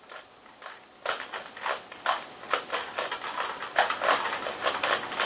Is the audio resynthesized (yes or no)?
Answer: no